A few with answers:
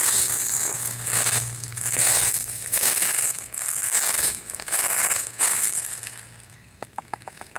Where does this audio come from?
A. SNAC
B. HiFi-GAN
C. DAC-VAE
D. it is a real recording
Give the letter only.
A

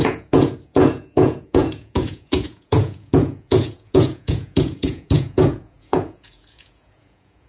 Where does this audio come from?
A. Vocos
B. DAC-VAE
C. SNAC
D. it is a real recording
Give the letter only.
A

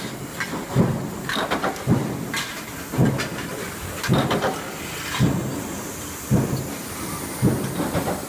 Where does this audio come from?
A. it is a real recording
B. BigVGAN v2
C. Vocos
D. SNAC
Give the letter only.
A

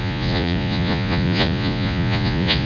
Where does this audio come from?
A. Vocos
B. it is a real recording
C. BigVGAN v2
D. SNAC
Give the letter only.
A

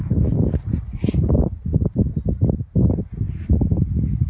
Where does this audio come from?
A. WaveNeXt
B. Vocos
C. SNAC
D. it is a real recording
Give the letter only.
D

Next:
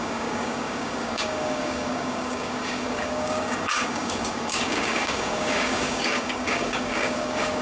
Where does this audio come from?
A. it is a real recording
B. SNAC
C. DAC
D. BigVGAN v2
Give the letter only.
C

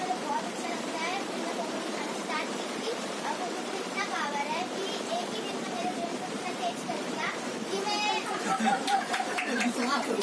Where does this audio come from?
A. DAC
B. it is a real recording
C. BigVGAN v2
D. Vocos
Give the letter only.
C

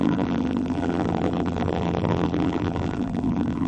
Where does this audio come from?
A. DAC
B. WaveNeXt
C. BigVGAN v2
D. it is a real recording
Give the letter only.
C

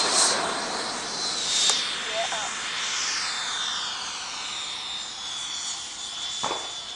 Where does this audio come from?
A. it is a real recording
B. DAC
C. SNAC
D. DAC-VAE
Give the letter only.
A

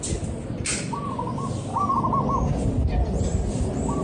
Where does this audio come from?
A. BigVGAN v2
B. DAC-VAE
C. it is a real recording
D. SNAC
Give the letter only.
C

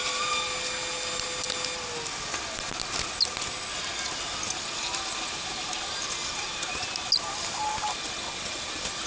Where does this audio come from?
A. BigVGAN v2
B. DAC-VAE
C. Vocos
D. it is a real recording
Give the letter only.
D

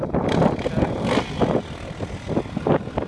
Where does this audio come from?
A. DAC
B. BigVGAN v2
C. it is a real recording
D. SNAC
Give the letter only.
C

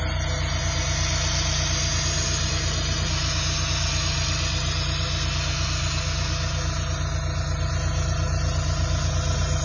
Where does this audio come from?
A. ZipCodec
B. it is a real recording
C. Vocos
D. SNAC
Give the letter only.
B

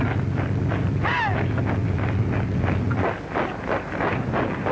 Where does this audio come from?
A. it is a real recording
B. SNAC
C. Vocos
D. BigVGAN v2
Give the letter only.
A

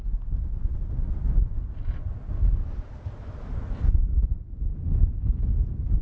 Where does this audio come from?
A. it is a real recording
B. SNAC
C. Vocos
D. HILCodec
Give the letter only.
A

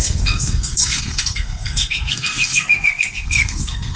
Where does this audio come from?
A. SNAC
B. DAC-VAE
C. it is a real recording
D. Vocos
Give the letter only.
A